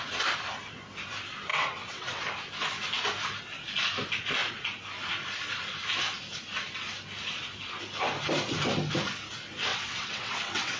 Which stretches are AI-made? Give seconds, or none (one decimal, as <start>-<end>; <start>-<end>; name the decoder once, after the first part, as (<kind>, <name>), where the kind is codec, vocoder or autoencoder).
1.5-2.2 (vocoder, WaveNeXt); 9.7-10.8